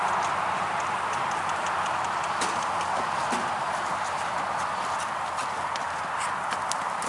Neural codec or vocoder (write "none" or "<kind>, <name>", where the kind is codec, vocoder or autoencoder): none